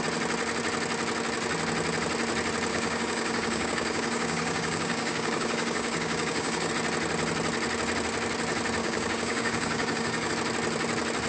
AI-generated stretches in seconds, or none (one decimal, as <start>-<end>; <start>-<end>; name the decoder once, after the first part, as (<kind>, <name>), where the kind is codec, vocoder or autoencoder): 2.7-6.7 (codec, DAC); 8.8-10.3